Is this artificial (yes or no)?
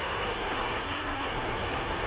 yes